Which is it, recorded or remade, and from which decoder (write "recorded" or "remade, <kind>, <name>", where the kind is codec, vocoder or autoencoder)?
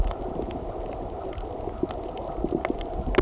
recorded